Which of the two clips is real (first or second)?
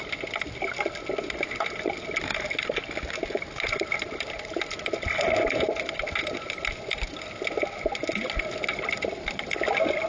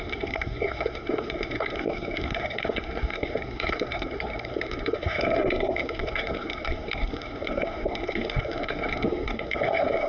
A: first